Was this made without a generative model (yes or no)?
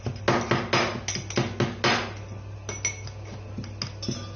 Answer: yes